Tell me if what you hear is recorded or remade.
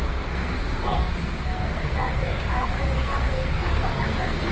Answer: remade